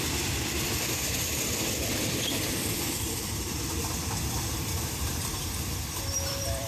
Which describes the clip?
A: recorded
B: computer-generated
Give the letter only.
B